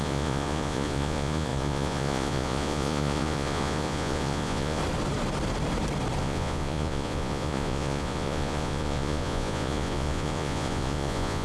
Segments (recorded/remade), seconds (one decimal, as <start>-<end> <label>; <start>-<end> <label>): 0.0-4.8 remade; 4.8-6.2 recorded; 6.2-11.4 remade